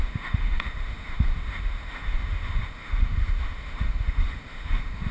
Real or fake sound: fake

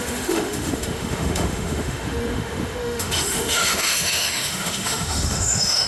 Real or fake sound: fake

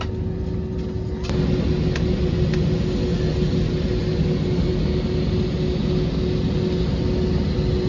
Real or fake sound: real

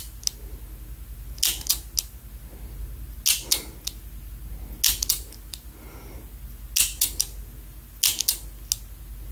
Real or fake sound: real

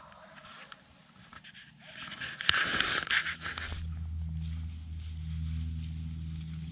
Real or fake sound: real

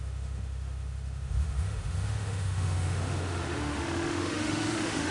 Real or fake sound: fake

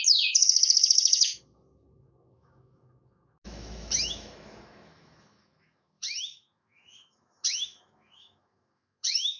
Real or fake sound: fake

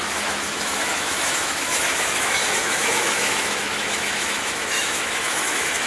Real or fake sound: fake